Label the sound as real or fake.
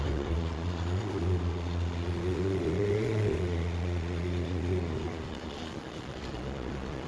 fake